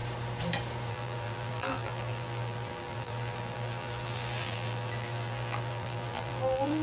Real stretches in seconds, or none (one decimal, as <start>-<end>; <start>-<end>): 0.0-0.9